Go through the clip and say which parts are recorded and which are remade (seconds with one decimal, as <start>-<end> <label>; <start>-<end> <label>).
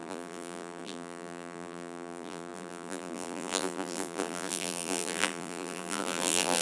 0.0-6.6 remade